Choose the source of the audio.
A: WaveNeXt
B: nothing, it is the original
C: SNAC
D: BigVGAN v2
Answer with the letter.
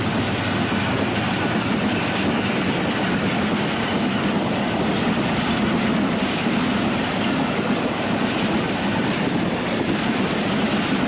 B